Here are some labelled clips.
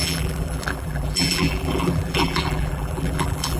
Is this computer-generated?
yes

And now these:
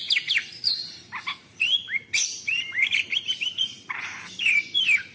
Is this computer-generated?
yes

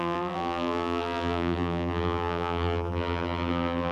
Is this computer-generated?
yes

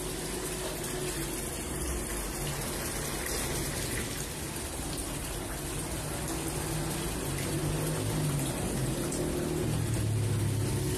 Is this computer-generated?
no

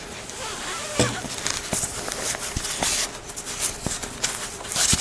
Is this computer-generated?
yes